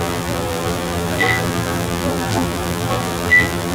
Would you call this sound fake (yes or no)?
yes